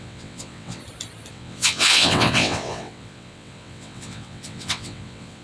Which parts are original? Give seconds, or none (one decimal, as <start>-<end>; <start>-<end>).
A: 0.8-1.3